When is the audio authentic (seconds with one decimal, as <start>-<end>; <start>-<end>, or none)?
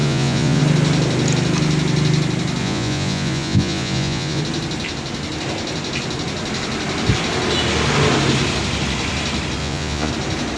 0.6-2.6; 4.4-9.6; 10.1-10.6